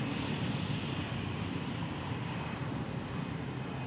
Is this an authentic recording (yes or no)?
no